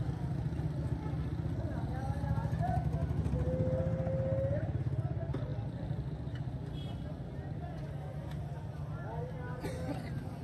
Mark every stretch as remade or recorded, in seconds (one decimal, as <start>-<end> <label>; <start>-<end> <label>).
0.0-10.4 recorded